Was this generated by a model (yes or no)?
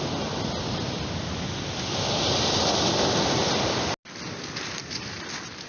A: no